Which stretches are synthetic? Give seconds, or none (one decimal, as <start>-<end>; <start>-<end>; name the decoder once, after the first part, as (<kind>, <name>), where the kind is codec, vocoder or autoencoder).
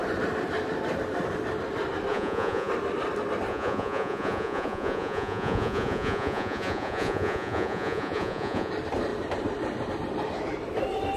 2.1-2.7 (vocoder, Vocos); 3.5-8.7